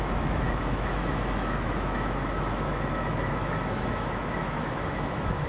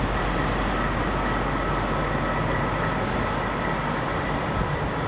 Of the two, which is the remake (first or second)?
first